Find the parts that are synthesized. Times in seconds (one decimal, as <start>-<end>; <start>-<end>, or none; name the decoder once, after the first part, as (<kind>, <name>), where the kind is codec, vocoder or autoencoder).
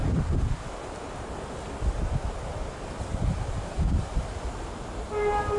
none